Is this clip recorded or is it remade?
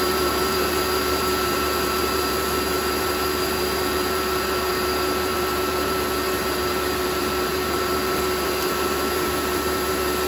remade